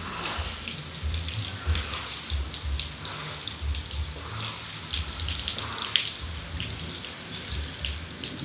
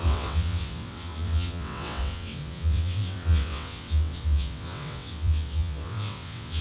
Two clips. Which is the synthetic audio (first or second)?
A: second